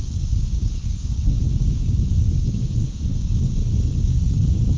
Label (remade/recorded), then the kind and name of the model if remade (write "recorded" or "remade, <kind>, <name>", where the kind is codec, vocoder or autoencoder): remade, codec, DAC